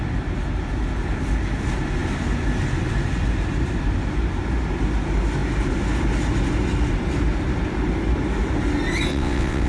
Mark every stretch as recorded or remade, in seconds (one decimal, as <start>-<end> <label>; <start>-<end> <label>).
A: 0.0-9.1 recorded; 9.1-9.7 remade